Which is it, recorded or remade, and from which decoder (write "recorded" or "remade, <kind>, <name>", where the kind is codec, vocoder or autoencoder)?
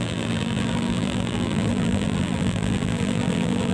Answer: remade, vocoder, BigVGAN v2